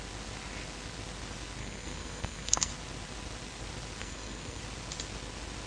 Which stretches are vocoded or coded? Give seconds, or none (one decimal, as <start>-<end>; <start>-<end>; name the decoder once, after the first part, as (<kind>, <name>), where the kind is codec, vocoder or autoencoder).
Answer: 1.6-2.7 (codec, SNAC); 4.0-4.6